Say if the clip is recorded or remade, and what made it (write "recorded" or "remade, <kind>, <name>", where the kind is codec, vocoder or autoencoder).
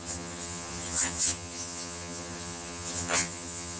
remade, vocoder, HiFi-GAN